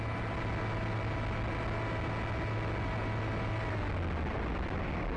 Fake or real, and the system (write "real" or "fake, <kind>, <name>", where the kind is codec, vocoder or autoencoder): real